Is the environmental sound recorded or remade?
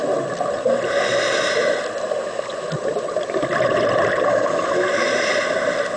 recorded